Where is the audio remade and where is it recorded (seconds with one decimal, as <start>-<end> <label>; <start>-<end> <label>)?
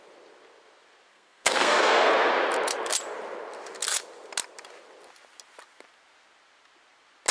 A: 0.0-1.1 recorded; 1.1-2.3 remade; 2.3-7.3 recorded